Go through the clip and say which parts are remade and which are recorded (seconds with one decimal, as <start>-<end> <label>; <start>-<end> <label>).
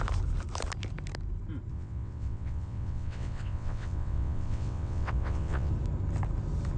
0.0-1.7 recorded; 1.7-5.7 remade; 5.7-6.8 recorded